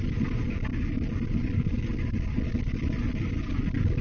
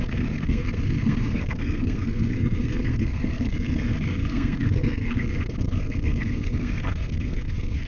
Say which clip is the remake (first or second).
second